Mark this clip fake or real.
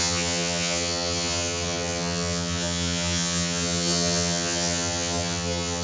fake